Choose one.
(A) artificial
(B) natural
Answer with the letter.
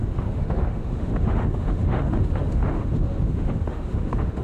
A